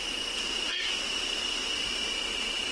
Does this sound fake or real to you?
real